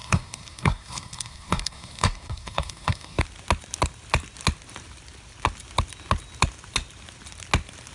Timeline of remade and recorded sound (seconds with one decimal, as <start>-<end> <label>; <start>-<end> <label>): 0.0-3.2 remade; 3.2-7.9 recorded